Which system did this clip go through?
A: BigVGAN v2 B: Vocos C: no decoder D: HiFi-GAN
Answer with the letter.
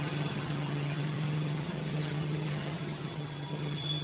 D